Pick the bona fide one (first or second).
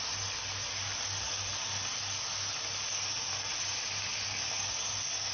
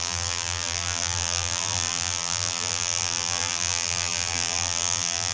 first